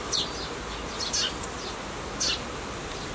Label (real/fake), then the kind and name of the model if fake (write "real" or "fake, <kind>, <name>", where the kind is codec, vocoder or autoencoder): real